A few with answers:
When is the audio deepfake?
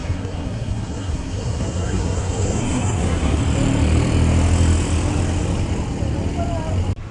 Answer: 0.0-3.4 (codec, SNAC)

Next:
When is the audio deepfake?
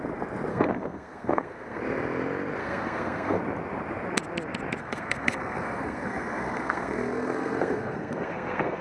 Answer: 0.5-1.8 (codec, SNAC); 2.6-3.4; 4.8-8.8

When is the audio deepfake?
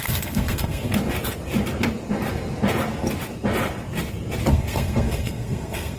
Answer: 0.0-0.9 (codec, SNAC); 4.5-6.0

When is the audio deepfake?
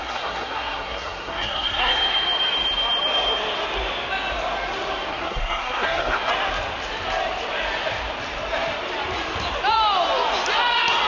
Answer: 0.0-1.9 (codec, SNAC); 5.1-6.3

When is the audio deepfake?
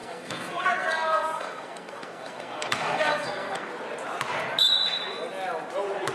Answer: 0.0-3.7 (codec, SNAC)